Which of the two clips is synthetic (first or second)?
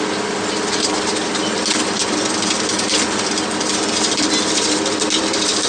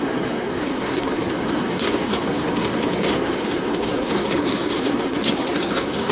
second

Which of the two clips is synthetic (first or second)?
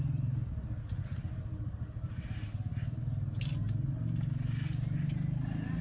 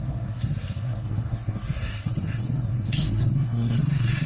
second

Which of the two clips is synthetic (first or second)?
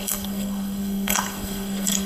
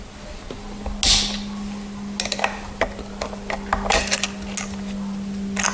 first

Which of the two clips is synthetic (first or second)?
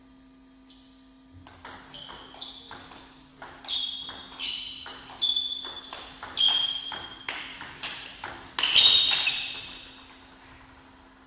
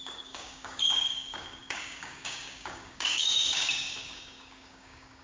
second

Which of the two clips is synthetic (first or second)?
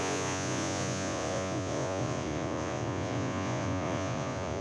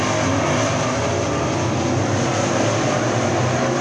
first